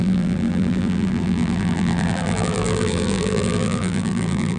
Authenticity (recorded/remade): remade